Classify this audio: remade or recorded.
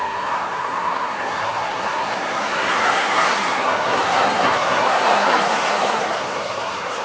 remade